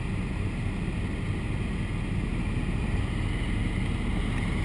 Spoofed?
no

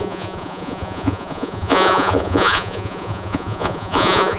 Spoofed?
yes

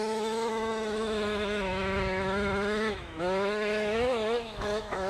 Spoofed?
yes